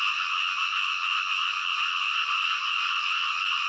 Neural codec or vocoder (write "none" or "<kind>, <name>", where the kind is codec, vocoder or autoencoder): none